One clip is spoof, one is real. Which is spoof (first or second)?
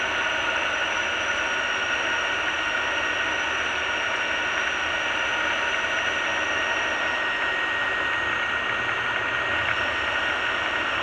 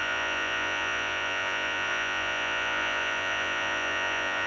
second